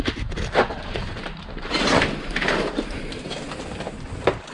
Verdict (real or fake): fake